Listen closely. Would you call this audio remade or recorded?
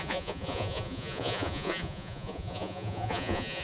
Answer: remade